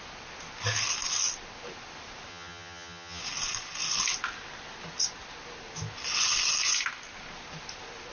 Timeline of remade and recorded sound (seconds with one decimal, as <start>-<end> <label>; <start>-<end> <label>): 0.0-2.3 recorded; 2.3-3.2 remade; 3.2-8.1 recorded